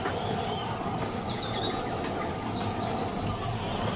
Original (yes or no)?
yes